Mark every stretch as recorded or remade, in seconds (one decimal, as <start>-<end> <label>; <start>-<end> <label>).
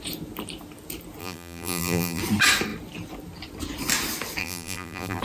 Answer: 0.0-1.2 recorded; 1.2-2.2 remade; 2.2-4.4 recorded; 4.4-5.2 remade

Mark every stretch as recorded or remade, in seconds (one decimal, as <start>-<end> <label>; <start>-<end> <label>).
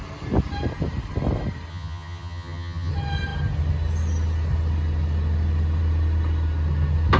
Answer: 0.0-1.7 recorded; 1.7-2.9 remade; 2.9-7.2 recorded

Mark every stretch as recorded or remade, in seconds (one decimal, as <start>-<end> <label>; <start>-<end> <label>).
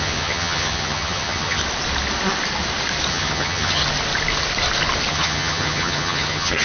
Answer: 0.0-1.6 remade; 1.6-3.1 recorded; 3.1-3.8 remade; 3.8-5.1 recorded; 5.1-6.6 remade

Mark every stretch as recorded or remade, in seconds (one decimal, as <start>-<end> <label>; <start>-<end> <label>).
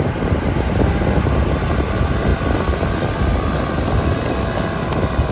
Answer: 0.0-5.3 recorded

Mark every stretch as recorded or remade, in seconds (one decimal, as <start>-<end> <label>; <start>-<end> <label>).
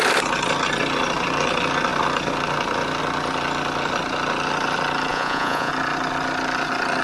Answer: 0.0-5.1 recorded; 5.1-5.7 remade; 5.7-7.0 recorded